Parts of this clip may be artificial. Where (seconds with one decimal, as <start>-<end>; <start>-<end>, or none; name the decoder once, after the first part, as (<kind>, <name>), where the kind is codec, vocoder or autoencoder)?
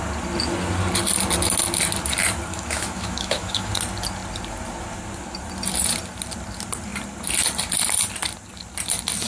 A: 2.5-3.7 (autoencoder, DAC-VAE)